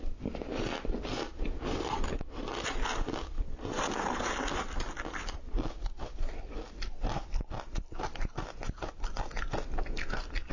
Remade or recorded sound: recorded